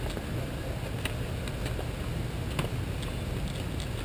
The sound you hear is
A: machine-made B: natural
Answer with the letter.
B